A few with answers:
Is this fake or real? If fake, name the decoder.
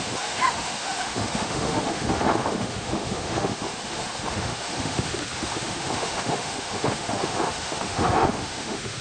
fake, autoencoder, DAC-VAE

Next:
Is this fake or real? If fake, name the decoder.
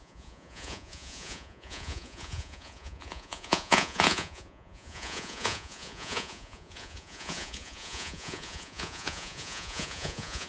fake, vocoder, Vocos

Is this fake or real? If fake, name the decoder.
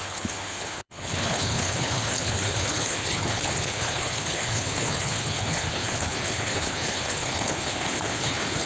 fake, codec, HILCodec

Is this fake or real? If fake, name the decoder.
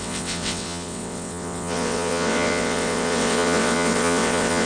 fake, vocoder, WaveNeXt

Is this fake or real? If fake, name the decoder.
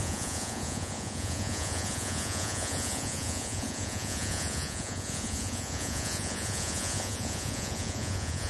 fake, vocoder, Vocos